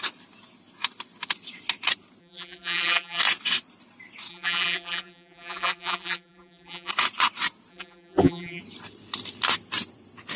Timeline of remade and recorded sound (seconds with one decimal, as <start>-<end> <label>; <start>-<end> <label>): 0.0-2.2 recorded; 2.2-3.2 remade; 3.2-4.3 recorded; 4.3-6.9 remade; 6.9-7.7 recorded; 7.7-8.6 remade; 8.6-10.4 recorded